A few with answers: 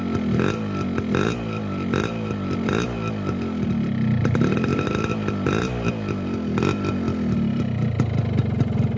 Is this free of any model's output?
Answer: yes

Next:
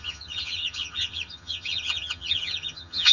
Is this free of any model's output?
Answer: no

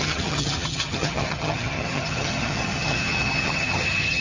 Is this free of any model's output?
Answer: no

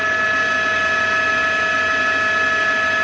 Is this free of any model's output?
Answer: yes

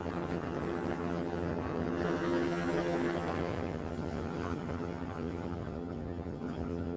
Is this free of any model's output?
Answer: no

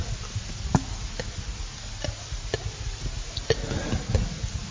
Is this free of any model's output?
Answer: yes